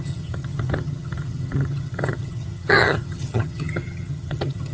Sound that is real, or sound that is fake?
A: fake